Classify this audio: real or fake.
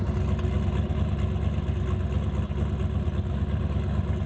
real